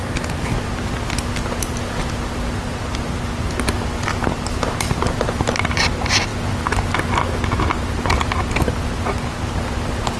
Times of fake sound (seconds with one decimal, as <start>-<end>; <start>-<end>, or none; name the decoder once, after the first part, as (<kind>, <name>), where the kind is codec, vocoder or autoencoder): none